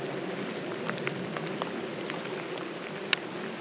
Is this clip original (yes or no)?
yes